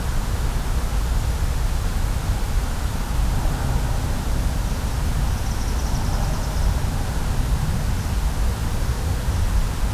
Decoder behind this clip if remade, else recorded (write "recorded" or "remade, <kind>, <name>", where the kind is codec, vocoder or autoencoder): recorded